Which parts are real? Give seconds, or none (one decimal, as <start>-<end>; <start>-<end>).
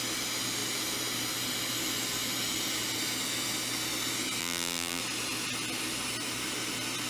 0.0-4.4; 5.0-7.1